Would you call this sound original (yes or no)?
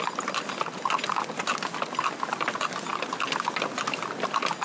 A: yes